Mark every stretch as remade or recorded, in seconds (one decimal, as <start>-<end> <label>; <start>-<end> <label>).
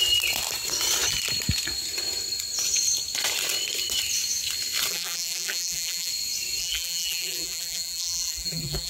0.0-4.9 recorded; 4.9-6.1 remade; 6.1-6.6 recorded; 6.6-8.9 remade